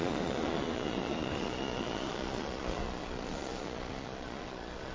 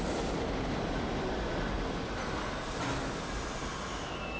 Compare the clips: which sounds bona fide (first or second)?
second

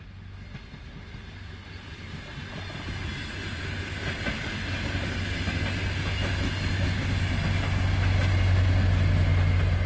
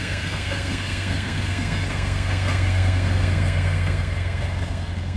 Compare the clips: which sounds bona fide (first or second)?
first